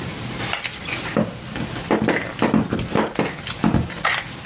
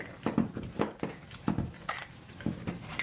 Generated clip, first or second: second